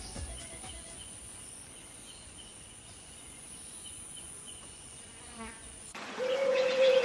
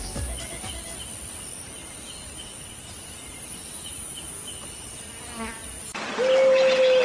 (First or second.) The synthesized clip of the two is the first